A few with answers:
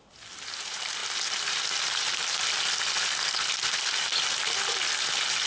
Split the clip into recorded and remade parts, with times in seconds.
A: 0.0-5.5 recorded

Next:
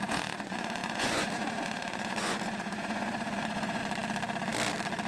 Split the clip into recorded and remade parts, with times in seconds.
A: 0.0-3.8 remade; 3.8-5.1 recorded

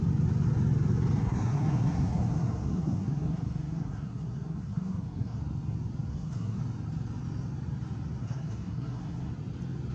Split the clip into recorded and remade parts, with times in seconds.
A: 0.0-1.2 recorded; 1.2-5.4 remade; 5.4-6.1 recorded; 6.1-6.6 remade; 6.6-8.2 recorded; 8.2-9.3 remade; 9.3-9.9 recorded

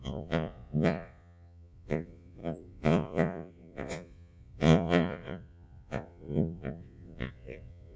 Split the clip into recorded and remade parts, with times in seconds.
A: 0.0-8.0 remade

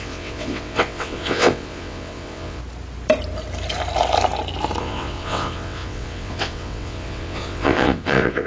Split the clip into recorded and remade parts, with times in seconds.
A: 0.0-2.6 remade; 2.6-4.8 recorded; 4.8-8.5 remade

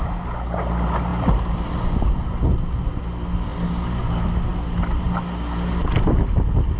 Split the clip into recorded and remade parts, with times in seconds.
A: 0.0-6.8 recorded